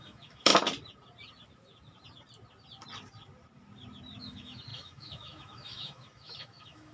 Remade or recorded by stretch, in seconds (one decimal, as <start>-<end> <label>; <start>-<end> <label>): 0.0-0.5 remade; 0.5-4.2 recorded; 4.2-6.9 remade